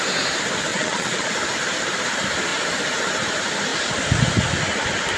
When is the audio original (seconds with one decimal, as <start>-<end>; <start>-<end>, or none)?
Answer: 0.0-0.7; 1.3-5.2